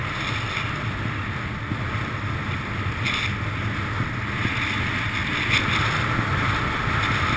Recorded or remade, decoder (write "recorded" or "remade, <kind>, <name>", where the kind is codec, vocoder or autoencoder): recorded